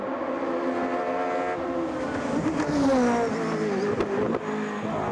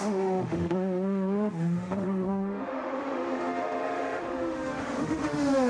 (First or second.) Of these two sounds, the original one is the first